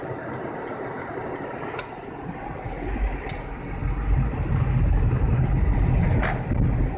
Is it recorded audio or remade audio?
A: recorded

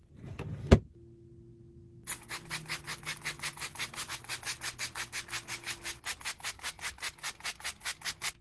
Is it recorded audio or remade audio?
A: recorded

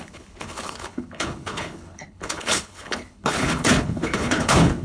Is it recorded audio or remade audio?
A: remade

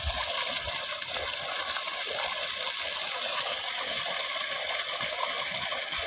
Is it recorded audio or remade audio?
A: recorded